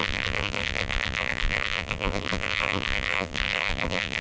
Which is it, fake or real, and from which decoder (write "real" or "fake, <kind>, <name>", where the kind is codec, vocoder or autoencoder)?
fake, vocoder, BigVGAN v2